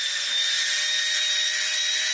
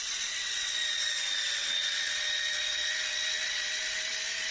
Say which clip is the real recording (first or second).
first